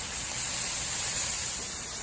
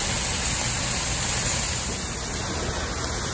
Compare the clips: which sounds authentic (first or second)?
second